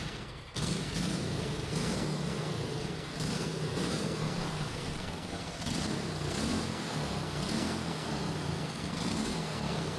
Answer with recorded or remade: remade